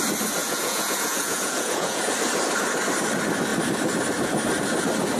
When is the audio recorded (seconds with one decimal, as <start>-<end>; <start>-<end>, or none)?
0.0-0.4; 2.0-5.2